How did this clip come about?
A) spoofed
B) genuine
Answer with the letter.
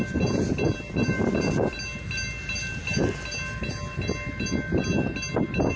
B